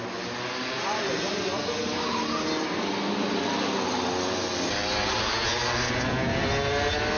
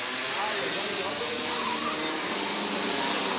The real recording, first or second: first